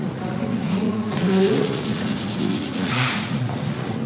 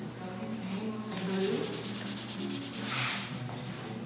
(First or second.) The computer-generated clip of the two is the first